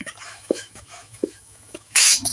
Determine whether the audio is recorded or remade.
remade